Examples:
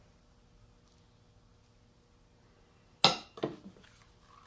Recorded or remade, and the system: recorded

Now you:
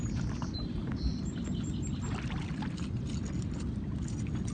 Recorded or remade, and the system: recorded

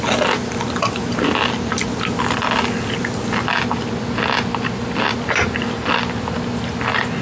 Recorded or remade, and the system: recorded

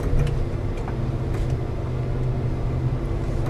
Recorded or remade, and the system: recorded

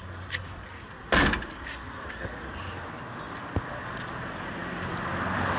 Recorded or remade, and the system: recorded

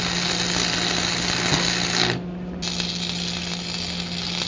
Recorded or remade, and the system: recorded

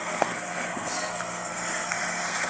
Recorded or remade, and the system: remade, codec, SNAC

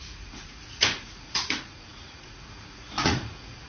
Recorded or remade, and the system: remade, vocoder, Vocos